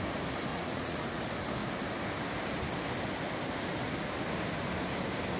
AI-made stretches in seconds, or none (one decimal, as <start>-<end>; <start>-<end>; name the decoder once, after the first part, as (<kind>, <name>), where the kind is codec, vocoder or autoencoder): 0.5-1.2 (vocoder, Vocos)